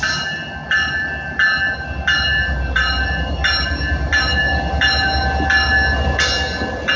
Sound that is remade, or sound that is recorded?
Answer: recorded